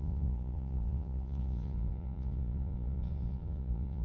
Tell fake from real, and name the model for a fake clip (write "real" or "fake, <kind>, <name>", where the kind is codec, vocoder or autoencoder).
fake, vocoder, Vocos